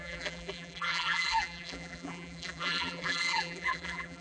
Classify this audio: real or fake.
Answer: fake